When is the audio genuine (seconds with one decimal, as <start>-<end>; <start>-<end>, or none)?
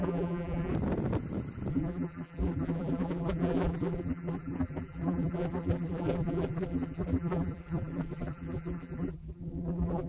0.7-1.7